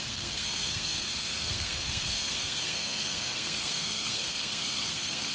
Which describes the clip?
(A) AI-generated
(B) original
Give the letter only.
A